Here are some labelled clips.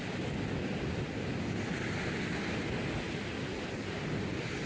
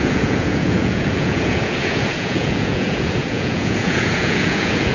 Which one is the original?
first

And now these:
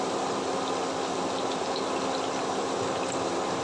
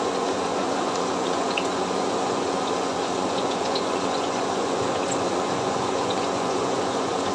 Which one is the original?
first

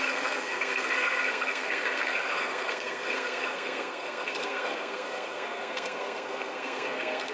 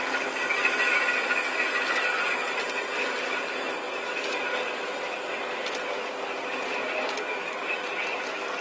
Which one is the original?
second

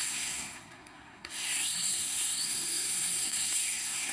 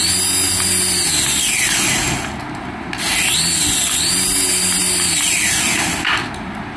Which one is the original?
second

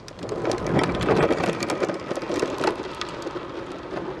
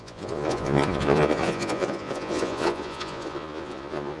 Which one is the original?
first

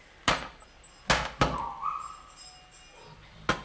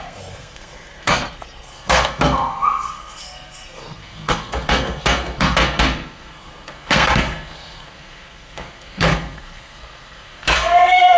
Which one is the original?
first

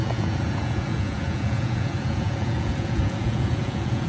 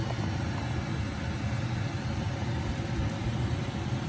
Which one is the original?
second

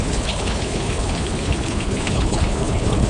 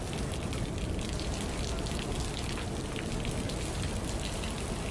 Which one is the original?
second